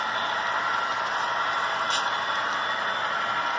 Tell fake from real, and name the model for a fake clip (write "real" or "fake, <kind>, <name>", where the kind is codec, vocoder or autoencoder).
real